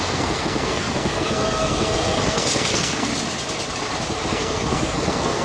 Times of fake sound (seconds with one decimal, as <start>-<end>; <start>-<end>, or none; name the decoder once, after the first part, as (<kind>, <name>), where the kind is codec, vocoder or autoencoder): 0.0-3.1 (codec, SNAC); 4.3-5.4

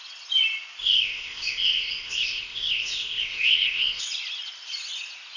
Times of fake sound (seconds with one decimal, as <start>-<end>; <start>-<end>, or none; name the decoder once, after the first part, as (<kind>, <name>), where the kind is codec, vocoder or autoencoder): 0.8-4.0 (codec, ZipCodec)

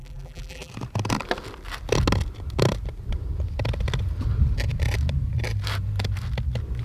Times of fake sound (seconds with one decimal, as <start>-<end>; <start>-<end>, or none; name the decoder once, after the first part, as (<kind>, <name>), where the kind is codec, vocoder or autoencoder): 0.0-0.7 (vocoder, BigVGAN v2)

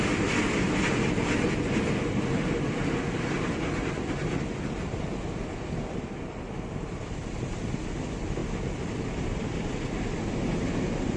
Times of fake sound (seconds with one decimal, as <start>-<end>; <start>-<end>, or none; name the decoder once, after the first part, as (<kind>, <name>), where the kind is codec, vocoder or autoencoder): none

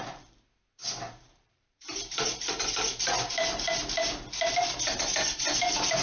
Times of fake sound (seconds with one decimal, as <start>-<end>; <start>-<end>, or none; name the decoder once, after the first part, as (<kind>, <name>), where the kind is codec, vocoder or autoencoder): 0.8-2.5 (vocoder, BigVGAN v2)

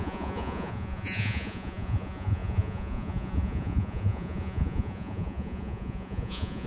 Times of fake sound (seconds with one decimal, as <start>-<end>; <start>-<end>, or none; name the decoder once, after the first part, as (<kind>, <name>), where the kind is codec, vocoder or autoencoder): 0.0-6.7 (vocoder, Vocos)